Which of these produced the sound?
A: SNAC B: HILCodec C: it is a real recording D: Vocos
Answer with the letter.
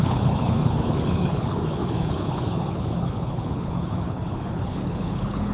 B